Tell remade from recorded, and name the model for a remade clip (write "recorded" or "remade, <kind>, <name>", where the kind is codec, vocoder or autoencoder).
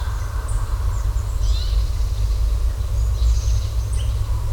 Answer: recorded